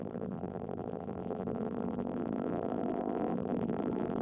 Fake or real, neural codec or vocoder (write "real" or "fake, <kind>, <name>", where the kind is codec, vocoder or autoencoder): fake, vocoder, BigVGAN v2